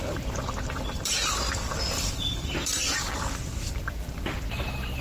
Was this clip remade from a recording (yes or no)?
yes